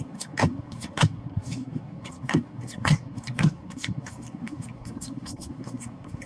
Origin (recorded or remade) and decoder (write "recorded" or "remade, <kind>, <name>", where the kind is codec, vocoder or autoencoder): remade, codec, SNAC